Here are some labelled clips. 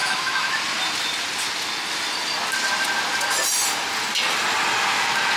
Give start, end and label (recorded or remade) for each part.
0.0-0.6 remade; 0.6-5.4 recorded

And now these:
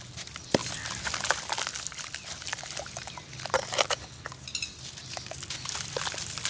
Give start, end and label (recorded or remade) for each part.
0.0-6.5 recorded